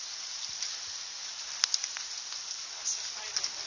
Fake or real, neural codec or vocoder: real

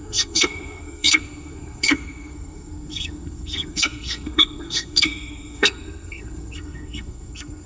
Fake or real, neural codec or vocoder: fake, codec, SNAC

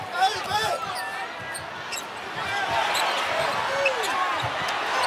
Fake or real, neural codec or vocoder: real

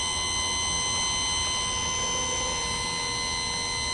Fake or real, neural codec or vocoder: real